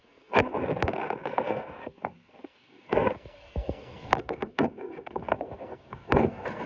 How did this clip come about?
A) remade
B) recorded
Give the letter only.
A